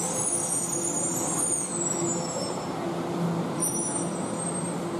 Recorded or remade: recorded